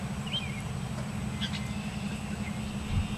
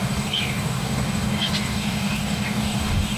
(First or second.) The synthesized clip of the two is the second